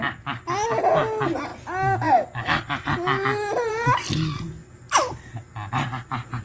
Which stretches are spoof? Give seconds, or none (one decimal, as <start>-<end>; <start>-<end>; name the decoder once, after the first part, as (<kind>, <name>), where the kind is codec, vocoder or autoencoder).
4.6-5.3 (vocoder, BigVGAN v2)